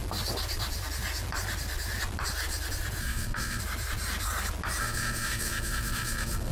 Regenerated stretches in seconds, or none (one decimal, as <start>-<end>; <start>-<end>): 3.0-3.6; 4.8-6.5